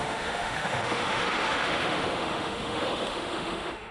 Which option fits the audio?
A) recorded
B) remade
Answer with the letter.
B